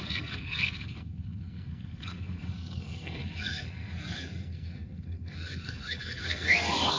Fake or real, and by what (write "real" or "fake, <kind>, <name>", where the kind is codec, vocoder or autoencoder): fake, codec, SNAC